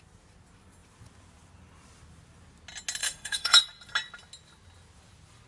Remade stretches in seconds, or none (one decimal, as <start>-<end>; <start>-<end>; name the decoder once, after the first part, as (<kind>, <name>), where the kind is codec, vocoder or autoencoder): 3.0-3.6 (autoencoder, DAC-VAE)